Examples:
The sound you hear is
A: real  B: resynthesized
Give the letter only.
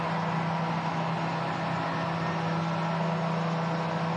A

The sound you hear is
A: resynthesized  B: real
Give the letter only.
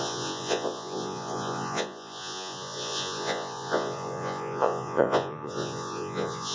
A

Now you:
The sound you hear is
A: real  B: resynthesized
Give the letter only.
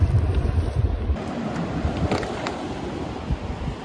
A